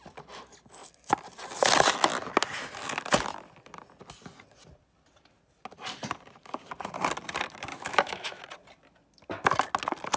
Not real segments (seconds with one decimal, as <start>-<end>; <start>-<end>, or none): 7.7-8.4